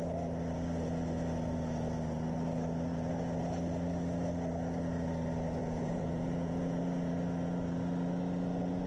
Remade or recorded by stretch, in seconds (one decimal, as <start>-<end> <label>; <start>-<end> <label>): 0.0-5.6 recorded; 5.6-6.8 remade; 6.8-8.9 recorded